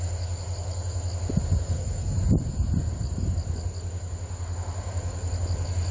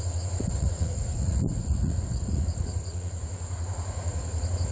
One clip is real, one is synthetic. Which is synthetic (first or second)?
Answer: second